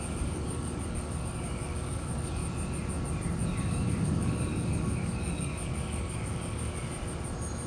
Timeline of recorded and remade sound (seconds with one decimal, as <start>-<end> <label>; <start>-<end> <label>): 0.0-2.4 remade; 2.4-3.6 recorded; 3.6-6.8 remade; 6.8-7.7 recorded